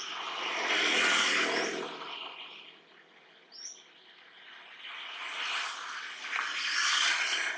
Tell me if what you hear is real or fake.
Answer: real